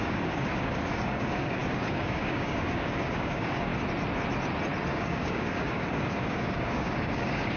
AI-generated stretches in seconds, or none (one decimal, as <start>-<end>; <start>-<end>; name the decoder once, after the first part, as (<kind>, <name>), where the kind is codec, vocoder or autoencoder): 0.0-3.7 (codec, DAC); 4.9-7.6